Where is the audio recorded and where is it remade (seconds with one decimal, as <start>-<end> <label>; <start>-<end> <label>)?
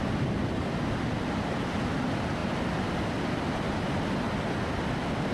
0.0-5.3 recorded